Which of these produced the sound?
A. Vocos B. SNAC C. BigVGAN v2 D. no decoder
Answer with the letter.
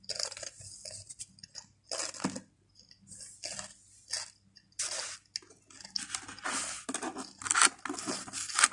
D